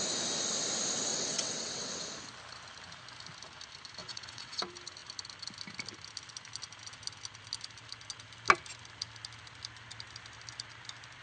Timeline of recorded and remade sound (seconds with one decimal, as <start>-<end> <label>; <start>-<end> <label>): 0.0-1.1 recorded; 1.1-1.9 remade; 1.9-4.0 recorded; 4.0-4.6 remade; 4.6-11.2 recorded